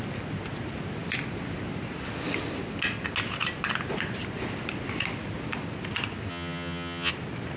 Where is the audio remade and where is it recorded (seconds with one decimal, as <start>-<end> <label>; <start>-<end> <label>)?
0.0-6.3 recorded; 6.3-7.1 remade; 7.1-7.6 recorded